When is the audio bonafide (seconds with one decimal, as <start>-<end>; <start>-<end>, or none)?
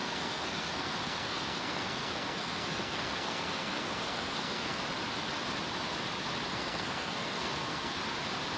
4.8-6.5; 8.0-8.6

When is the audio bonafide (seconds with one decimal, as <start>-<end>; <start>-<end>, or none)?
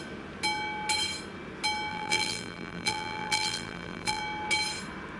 0.0-1.9; 4.2-5.2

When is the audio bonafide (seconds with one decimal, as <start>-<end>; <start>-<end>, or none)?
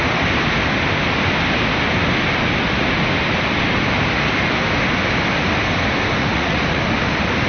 0.0-6.2; 6.8-7.5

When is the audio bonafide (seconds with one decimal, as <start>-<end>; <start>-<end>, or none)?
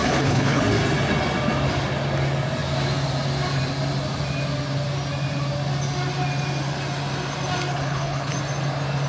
0.6-7.7; 8.3-9.1